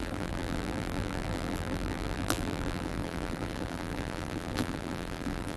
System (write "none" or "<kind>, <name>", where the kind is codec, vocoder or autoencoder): vocoder, BigVGAN v2